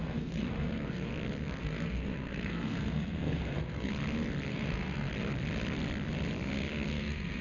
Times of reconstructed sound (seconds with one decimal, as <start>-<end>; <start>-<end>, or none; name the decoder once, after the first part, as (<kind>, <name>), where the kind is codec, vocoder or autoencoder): 0.0-1.1 (codec, SNAC); 1.6-3.9; 4.5-5.1; 6.9-7.4